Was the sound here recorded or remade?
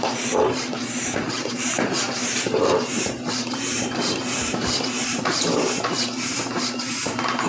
remade